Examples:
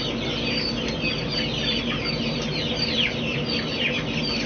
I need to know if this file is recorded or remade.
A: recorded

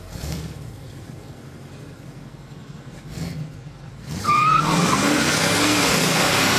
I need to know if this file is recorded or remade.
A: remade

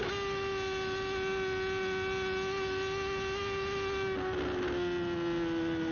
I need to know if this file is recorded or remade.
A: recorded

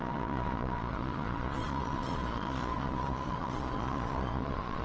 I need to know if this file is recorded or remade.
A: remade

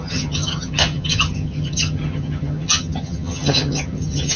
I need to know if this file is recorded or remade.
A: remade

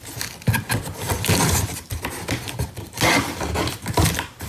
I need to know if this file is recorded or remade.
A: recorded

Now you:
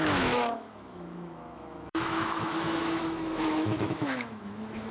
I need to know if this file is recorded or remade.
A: remade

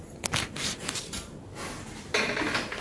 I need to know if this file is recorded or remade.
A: remade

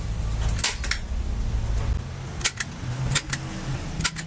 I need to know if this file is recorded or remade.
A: recorded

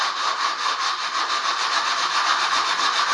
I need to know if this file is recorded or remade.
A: recorded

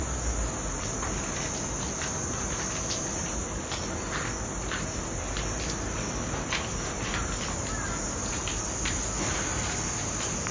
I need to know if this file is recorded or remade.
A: recorded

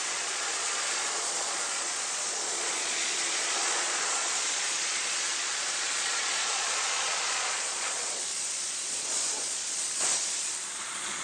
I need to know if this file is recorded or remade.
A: remade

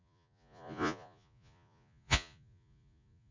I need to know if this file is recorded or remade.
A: remade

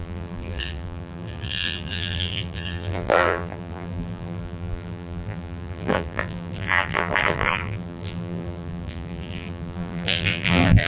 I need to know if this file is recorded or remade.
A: remade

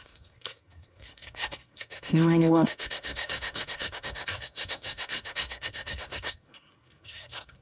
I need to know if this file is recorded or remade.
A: remade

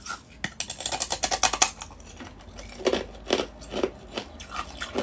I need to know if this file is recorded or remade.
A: recorded